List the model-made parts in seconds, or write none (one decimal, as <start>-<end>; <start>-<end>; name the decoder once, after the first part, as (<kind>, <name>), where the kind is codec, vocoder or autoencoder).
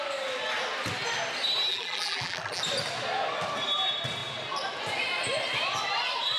1.7-2.6 (vocoder, BigVGAN v2)